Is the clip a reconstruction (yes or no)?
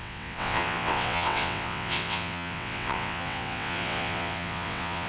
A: yes